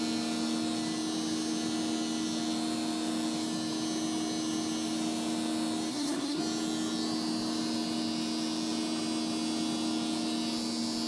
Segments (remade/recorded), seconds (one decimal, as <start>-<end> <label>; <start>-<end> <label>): 0.0-5.9 recorded; 5.9-6.4 remade; 6.4-11.1 recorded